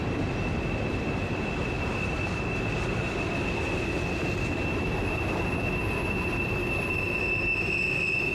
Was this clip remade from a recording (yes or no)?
no